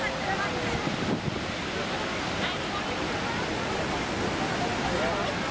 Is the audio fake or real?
real